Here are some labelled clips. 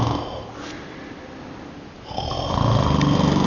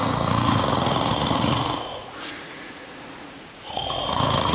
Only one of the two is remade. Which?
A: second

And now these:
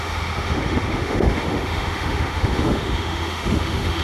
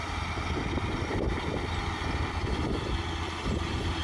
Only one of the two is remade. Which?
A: first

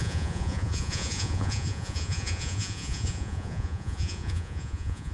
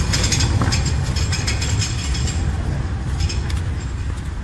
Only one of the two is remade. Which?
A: first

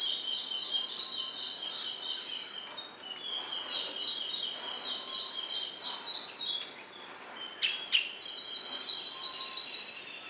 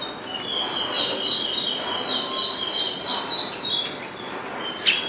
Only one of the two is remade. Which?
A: first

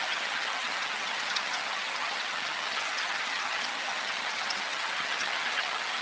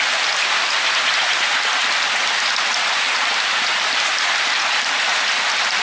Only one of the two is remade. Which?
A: first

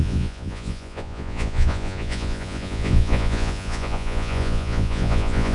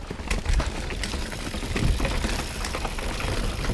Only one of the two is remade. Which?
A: first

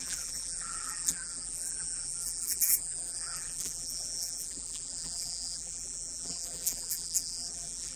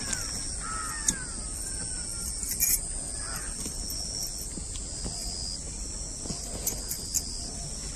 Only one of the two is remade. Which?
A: first